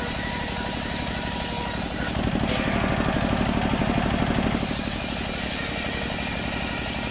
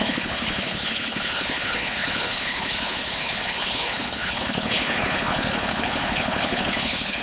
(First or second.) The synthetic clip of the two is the second